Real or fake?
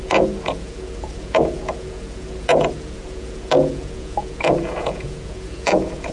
fake